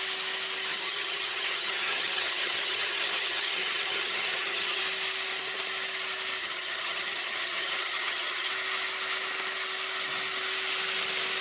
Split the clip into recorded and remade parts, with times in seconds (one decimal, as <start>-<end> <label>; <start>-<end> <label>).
0.0-0.7 recorded; 0.7-4.8 remade; 4.8-6.4 recorded; 6.4-8.5 remade; 8.5-11.4 recorded